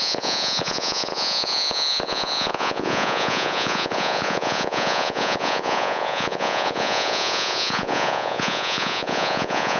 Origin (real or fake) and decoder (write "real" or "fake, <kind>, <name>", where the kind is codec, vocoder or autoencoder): fake, vocoder, Vocos